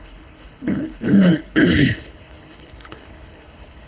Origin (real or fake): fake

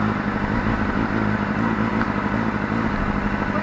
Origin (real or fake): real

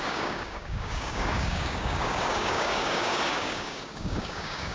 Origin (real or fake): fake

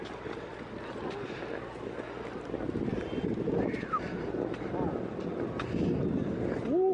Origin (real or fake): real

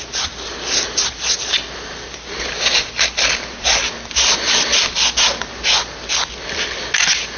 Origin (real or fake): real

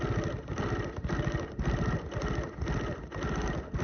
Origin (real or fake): real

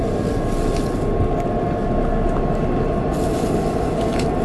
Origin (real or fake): real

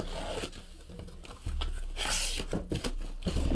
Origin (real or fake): real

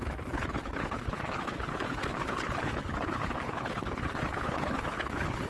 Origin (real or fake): fake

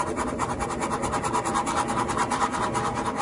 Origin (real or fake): real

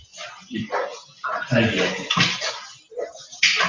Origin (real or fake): real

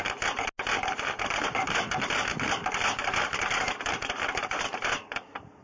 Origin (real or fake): real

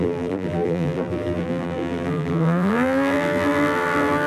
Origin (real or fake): fake